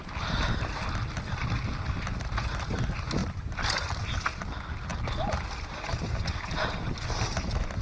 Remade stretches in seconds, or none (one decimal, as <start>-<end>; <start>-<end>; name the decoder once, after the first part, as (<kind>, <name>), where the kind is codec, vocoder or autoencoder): 2.1-2.8 (vocoder, BigVGAN v2); 3.2-3.7; 4.9-6.2